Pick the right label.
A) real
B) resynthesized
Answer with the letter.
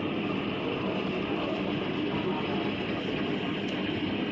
A